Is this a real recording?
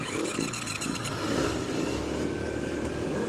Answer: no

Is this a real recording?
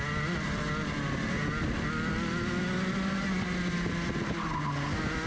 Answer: yes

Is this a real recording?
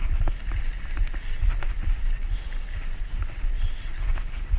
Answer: yes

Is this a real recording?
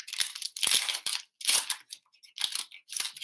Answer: yes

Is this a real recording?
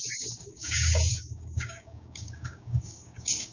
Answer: no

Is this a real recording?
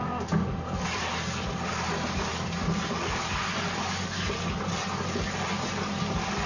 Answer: yes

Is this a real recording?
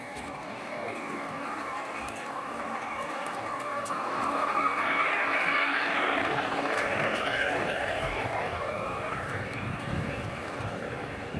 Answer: no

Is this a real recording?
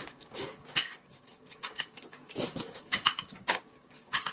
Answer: no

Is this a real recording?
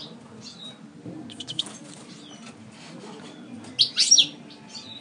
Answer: yes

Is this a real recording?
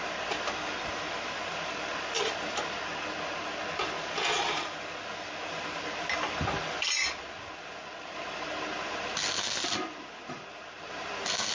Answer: yes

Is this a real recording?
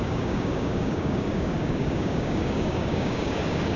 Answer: no